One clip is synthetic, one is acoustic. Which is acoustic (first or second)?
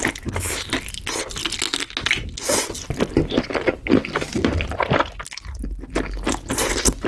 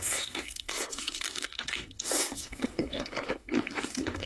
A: first